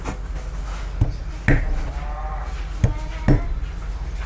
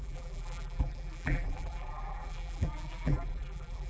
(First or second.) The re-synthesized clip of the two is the second